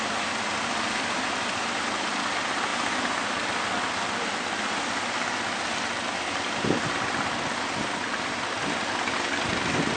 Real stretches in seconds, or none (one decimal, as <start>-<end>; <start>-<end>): 0.0-10.0